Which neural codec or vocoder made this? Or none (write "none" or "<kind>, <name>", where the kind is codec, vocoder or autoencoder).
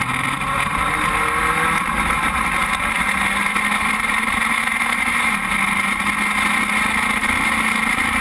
none